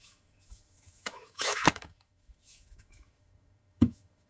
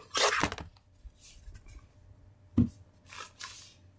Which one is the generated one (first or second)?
first